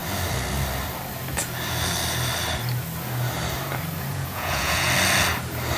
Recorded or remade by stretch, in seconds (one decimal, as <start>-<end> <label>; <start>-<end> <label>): 0.0-4.1 recorded; 4.1-4.9 remade; 4.9-5.8 recorded